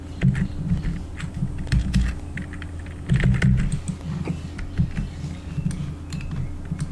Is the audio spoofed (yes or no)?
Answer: no